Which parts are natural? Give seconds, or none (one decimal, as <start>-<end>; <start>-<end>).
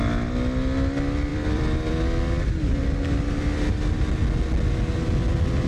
0.0-1.3; 2.0-5.7